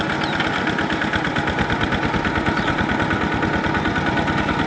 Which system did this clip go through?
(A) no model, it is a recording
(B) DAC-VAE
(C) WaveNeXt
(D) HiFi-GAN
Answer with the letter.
A